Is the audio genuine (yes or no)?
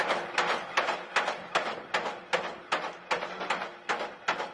yes